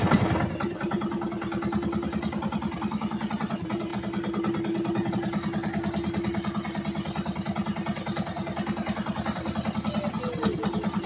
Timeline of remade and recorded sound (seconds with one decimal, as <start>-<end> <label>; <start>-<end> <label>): 0.0-11.1 recorded